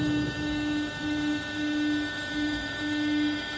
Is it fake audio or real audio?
fake